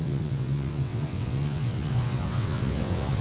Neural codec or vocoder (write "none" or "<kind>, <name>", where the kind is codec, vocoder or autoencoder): vocoder, WaveNeXt